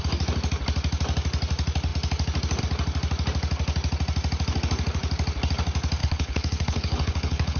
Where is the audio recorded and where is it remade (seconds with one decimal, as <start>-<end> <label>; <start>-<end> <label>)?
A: 0.0-6.0 recorded; 6.0-7.6 remade